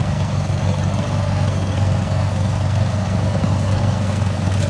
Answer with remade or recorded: remade